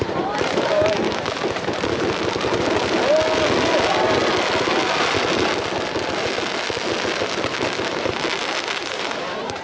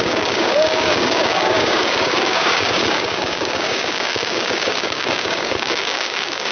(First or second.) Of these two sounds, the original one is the first